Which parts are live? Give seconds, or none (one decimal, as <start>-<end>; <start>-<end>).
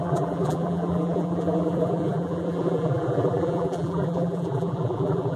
none